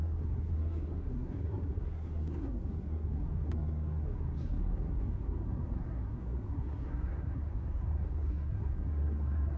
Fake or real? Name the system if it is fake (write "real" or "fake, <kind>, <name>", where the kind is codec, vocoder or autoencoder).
fake, codec, SNAC